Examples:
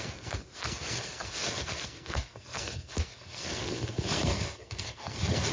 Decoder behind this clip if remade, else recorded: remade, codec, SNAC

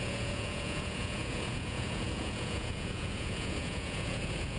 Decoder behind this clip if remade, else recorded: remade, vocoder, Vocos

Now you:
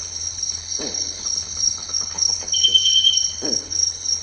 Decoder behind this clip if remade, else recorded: remade, codec, HILCodec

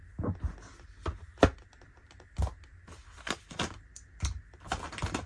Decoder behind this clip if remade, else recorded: recorded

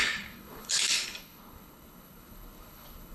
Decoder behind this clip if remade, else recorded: remade, codec, HILCodec